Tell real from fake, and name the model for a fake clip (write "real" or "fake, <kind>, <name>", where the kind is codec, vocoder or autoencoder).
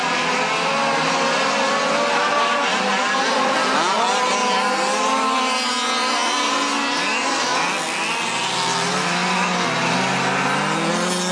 real